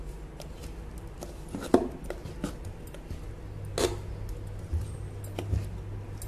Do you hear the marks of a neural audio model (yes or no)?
no